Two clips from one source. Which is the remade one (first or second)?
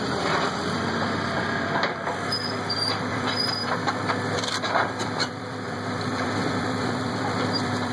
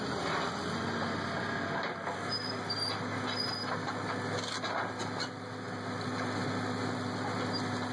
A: first